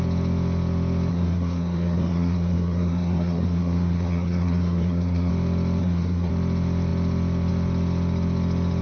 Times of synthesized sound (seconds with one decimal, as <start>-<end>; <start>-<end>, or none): 1.1-5.3; 5.8-6.3

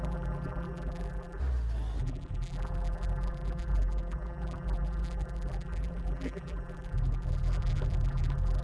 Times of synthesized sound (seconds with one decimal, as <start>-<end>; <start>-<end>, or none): 0.0-1.4; 2.0-8.6

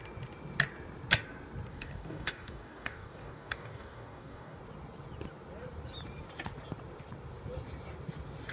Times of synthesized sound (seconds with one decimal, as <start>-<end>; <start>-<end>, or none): 1.7-4.6

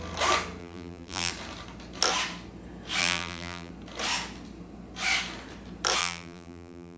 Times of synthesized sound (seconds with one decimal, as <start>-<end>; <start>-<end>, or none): 0.6-1.3; 3.0-3.7; 6.0-7.0

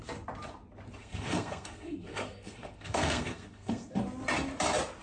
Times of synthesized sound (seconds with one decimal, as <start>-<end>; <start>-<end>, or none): 1.0-4.0